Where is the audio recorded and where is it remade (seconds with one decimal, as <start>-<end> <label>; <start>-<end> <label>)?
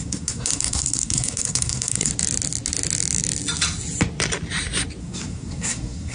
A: 0.0-2.1 remade; 2.1-5.0 recorded; 5.0-6.1 remade